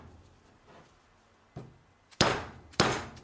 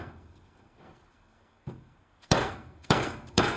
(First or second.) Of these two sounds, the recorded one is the first